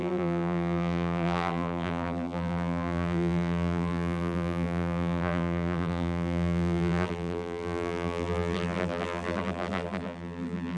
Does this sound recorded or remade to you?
remade